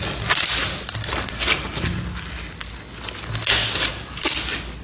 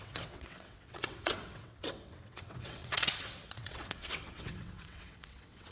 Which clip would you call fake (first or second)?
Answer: second